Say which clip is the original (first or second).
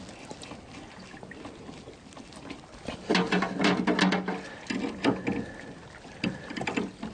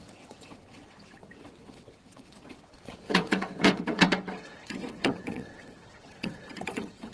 first